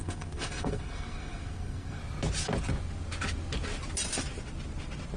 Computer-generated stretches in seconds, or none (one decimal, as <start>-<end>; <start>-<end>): 0.0-2.0

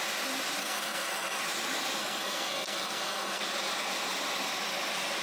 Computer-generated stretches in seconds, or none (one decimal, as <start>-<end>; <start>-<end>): 0.6-1.4; 2.0-3.4

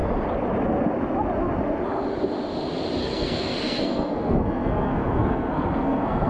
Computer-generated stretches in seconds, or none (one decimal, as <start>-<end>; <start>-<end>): 3.0-6.3

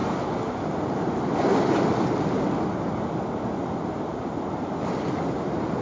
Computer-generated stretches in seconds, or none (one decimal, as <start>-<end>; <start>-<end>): none

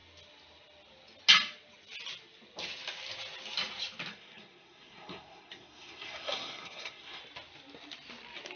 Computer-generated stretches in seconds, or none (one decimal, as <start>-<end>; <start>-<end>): 4.1-7.2

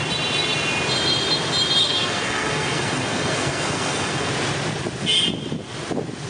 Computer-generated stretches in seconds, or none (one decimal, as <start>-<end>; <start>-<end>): 1.8-4.3